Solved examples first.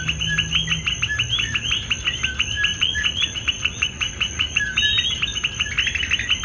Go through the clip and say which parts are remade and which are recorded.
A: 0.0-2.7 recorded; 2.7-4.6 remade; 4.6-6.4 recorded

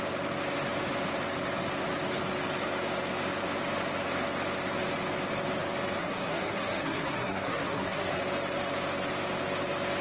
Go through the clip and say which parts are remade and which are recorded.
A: 0.0-6.0 recorded; 6.0-8.2 remade; 8.2-10.0 recorded

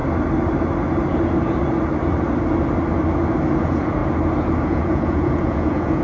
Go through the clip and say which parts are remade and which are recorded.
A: 0.0-3.6 recorded; 3.6-4.0 remade; 4.0-4.6 recorded; 4.6-6.0 remade